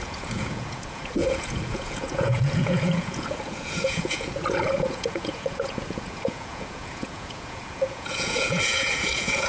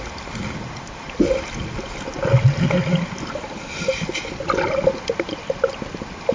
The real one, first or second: second